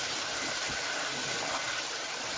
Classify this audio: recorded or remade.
recorded